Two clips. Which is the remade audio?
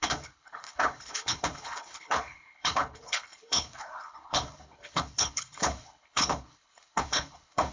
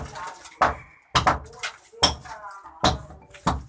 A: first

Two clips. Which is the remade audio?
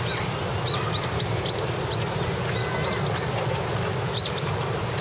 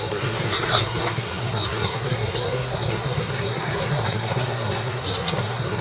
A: second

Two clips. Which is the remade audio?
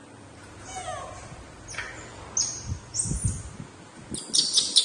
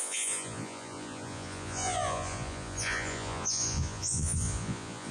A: second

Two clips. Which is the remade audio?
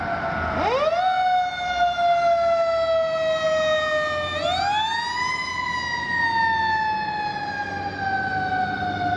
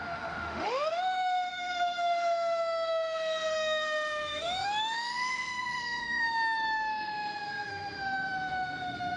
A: second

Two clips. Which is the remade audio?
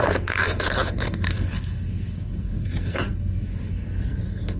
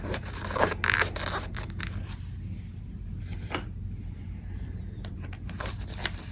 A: first